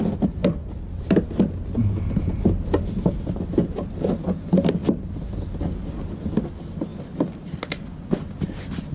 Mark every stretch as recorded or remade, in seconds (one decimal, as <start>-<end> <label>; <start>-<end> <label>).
0.0-0.4 remade; 0.4-4.7 recorded; 4.7-8.9 remade